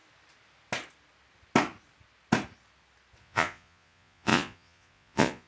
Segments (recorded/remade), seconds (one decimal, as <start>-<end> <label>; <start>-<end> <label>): 0.0-3.2 recorded; 3.2-5.5 remade